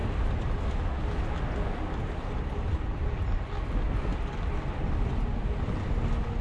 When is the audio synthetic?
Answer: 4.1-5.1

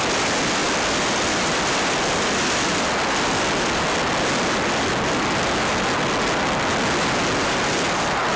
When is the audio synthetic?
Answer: none

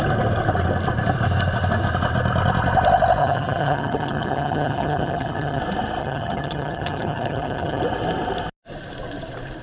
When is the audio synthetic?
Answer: 3.2-5.6; 6.0-7.8

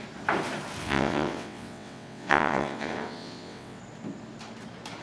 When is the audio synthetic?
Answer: 0.8-3.8

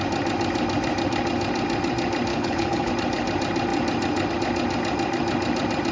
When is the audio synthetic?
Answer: 2.3-2.9

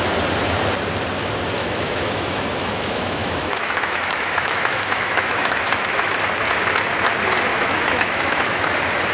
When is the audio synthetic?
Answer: 1.6-6.1; 7.5-8.7

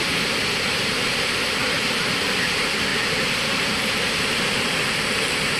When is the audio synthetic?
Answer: 0.0-5.6

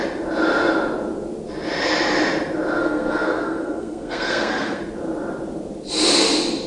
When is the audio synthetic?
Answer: 2.8-4.8